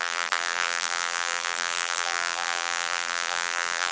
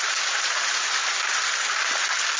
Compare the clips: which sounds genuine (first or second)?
second